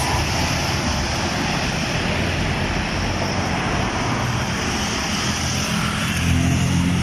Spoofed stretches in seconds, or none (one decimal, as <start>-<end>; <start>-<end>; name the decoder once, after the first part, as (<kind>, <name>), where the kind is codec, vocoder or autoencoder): none